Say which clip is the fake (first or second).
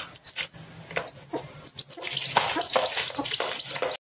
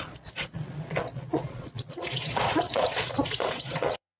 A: second